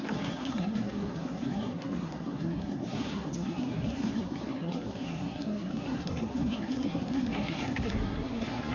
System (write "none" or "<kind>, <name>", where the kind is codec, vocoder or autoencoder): codec, SNAC